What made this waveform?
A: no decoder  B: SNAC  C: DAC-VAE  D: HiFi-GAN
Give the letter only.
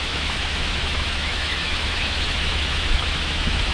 C